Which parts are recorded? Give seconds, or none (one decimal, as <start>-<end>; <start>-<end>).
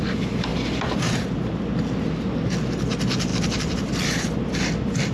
0.0-0.5; 1.3-3.3